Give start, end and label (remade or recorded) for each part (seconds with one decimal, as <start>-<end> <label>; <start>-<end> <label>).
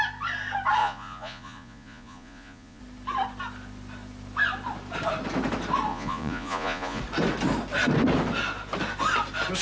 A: 0.0-0.8 recorded; 0.8-2.8 remade; 2.8-5.9 recorded; 5.9-7.0 remade; 7.0-9.6 recorded